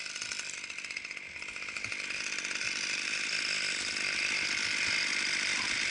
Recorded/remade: recorded